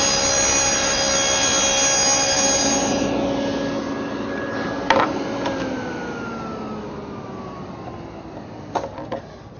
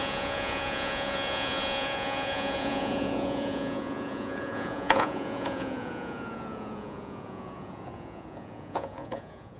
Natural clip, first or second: first